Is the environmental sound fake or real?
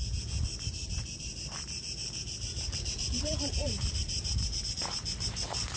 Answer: fake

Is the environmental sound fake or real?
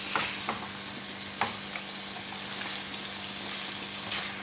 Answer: real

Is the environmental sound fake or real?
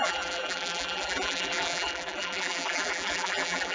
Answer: fake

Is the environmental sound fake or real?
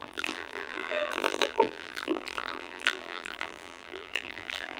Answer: fake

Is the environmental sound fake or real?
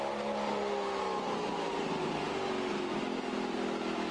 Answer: real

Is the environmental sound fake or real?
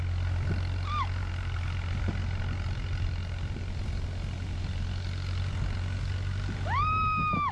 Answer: real